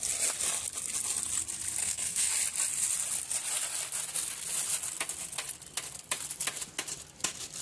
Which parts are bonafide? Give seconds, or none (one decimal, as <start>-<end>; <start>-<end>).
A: 0.0-1.8; 2.3-7.6